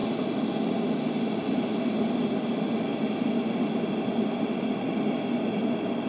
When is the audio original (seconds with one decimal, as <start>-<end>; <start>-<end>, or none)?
0.0-6.1